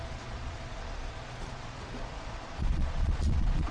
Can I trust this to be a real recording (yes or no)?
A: no